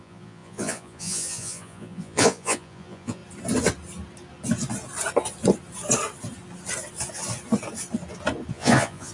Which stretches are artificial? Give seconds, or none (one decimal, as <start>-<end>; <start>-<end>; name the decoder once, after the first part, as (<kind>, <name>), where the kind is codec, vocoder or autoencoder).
0.0-3.2 (vocoder, Vocos); 8.5-9.1